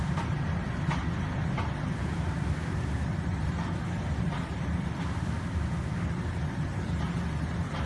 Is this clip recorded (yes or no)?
yes